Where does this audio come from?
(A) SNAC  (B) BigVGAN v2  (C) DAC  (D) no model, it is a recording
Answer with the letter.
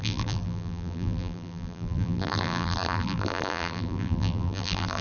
B